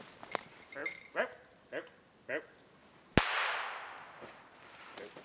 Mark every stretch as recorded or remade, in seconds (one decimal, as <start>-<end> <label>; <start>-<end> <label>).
0.0-5.2 recorded